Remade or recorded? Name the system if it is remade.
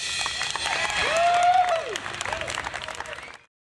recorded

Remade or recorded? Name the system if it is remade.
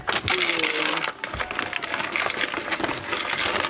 recorded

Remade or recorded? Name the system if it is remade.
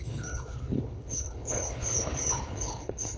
remade, codec, HILCodec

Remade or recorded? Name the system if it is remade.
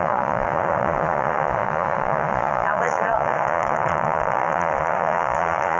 remade, vocoder, Vocos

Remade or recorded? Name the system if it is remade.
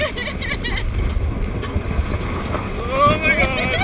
recorded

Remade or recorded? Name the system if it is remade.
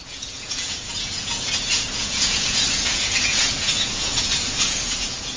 remade, vocoder, Vocos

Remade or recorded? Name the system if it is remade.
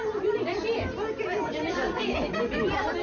recorded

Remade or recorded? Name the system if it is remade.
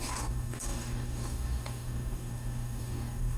remade, codec, DAC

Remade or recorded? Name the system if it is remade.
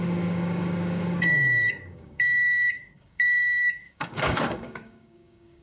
remade, codec, DAC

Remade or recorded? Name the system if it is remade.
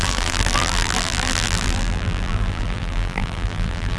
remade, vocoder, BigVGAN v2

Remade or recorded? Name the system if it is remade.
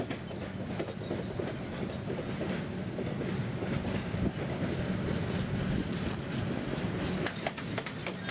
recorded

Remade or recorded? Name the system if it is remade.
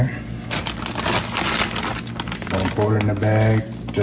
recorded